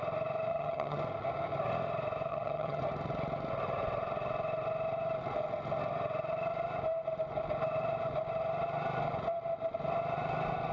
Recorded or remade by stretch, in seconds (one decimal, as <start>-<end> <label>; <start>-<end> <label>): 0.0-0.5 recorded; 0.5-1.0 remade; 1.0-2.3 recorded; 2.3-2.8 remade; 2.8-10.7 recorded

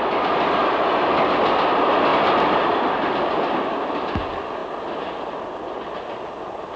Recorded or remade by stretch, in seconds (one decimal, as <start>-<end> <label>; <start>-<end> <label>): 0.0-6.8 recorded

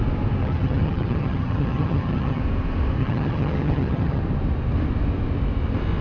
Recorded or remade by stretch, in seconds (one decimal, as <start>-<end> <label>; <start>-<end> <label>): 0.0-0.4 recorded; 0.4-2.4 remade; 2.4-3.0 recorded; 3.0-4.2 remade; 4.2-6.0 recorded

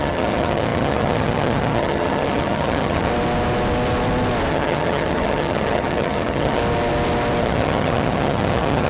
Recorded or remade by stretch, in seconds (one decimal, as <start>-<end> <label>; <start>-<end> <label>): 0.0-3.1 remade; 3.1-4.5 recorded; 4.5-6.6 remade; 6.6-7.4 recorded; 7.4-8.9 remade